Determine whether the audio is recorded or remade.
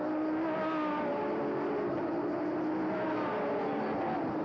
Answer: recorded